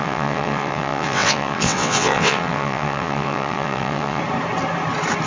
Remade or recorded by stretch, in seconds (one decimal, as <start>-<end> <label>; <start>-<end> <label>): 0.0-4.2 remade; 4.2-5.3 recorded